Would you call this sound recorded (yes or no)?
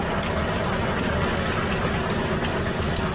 yes